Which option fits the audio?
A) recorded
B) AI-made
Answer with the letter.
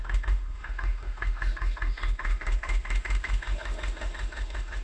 B